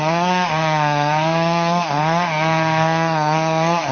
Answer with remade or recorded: remade